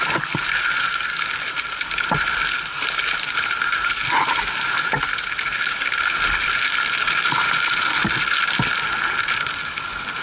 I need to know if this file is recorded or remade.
recorded